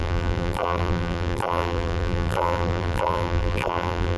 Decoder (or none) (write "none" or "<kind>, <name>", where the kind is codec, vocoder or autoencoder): vocoder, BigVGAN v2